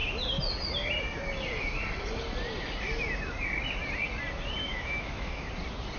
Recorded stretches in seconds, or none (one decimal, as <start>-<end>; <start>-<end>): 0.0-4.6; 5.5-6.0